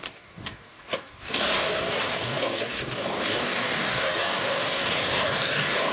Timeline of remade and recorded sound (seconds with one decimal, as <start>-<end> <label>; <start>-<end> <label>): 0.0-5.9 remade